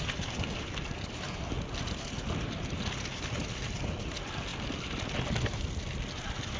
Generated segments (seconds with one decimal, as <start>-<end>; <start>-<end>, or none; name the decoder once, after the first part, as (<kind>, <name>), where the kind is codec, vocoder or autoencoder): none